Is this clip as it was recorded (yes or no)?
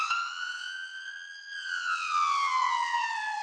no